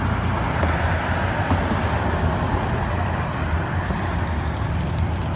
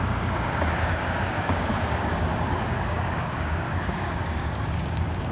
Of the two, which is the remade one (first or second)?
second